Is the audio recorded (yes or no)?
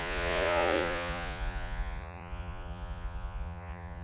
no